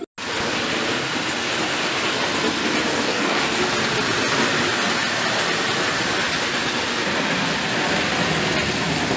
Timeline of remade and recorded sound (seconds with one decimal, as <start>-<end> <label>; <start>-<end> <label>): 0.0-2.9 recorded; 2.9-3.4 remade; 3.4-9.2 recorded